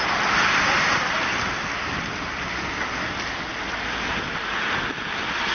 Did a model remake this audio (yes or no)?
no